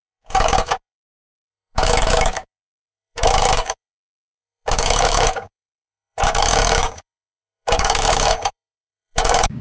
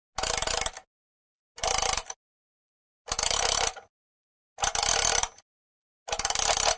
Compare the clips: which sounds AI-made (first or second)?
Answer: first